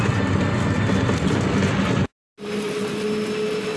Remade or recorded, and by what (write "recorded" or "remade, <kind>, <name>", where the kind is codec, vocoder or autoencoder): recorded